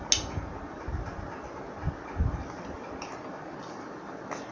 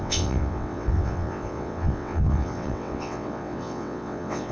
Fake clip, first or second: second